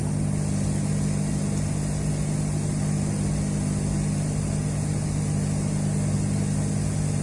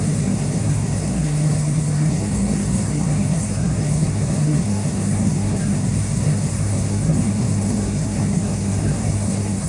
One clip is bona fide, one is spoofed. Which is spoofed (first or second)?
second